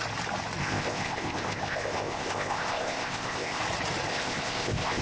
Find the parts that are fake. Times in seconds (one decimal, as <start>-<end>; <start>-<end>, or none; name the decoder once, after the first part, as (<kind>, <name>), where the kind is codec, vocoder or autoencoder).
0.6-3.6 (codec, ZipCodec); 4.1-5.0